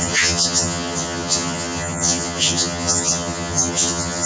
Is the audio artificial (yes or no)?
yes